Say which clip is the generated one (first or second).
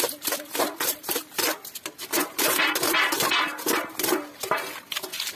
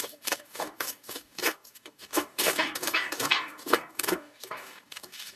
second